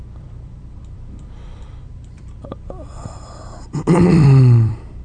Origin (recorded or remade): remade